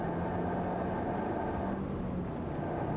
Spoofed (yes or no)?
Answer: no